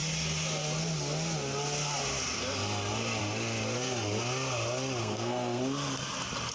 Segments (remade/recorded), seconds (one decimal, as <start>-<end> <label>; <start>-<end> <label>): 0.0-5.0 recorded; 5.0-5.6 remade; 5.6-6.5 recorded